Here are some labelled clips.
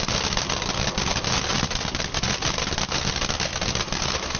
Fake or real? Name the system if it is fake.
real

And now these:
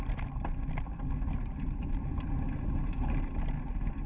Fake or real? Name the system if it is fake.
real